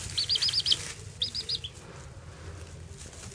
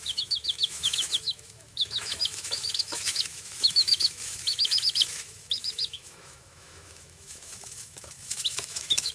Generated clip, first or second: second